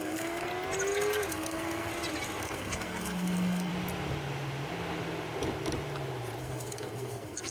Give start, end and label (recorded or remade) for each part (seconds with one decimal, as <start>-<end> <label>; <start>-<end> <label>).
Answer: 0.0-0.5 remade; 0.5-1.3 recorded; 1.3-1.9 remade; 1.9-2.4 recorded; 2.4-3.7 remade; 3.7-6.4 recorded; 6.4-7.5 remade